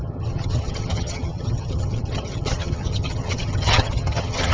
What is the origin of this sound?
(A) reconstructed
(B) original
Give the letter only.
A